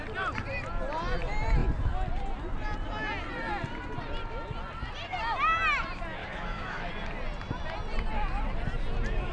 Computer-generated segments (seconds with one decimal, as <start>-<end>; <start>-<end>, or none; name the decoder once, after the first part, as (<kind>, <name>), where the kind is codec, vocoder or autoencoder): 6.2-6.9 (autoencoder, DAC-VAE)